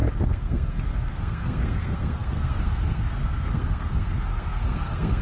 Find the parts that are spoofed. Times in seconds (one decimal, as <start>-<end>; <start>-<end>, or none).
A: 0.0-5.2